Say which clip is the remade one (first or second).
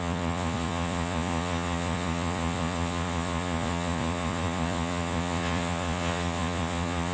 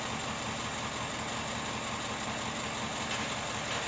first